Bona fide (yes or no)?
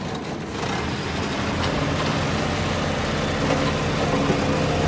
yes